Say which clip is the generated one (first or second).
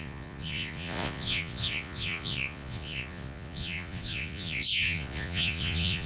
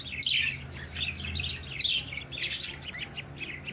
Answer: first